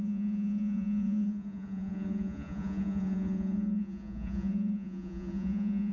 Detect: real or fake fake